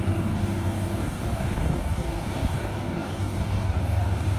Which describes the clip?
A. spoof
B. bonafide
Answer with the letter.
A